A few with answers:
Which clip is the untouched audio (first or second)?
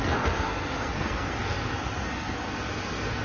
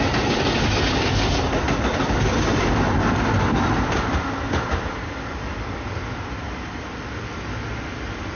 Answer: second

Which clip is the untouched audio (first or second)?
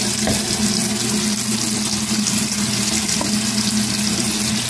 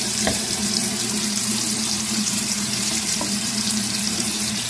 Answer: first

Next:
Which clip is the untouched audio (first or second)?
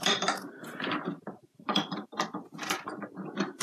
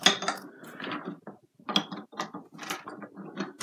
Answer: second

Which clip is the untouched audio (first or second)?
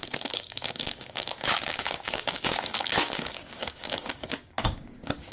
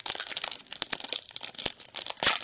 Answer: second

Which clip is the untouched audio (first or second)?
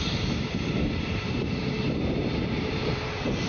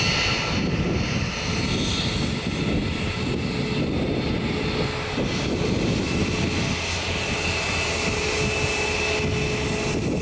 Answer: second